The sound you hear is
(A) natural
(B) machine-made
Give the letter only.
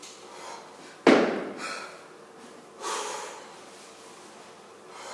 A